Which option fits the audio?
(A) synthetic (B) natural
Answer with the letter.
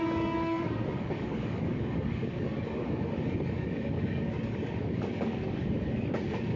A